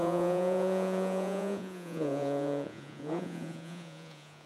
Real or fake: fake